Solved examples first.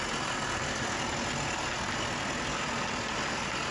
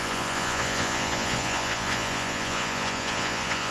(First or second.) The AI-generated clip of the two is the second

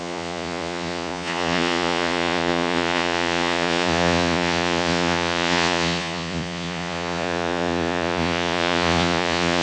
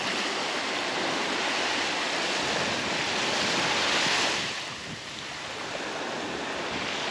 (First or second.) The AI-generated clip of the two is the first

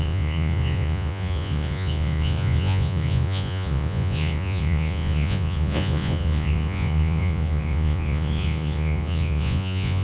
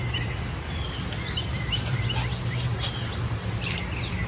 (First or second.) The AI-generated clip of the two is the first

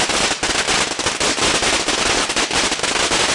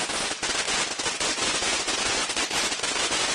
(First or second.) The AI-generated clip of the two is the second